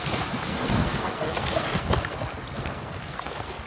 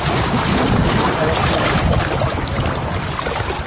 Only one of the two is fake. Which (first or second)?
first